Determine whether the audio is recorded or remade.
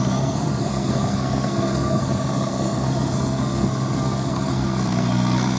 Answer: remade